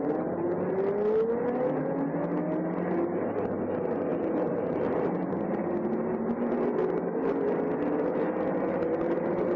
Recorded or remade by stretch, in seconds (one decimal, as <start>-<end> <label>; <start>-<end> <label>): 0.0-9.6 recorded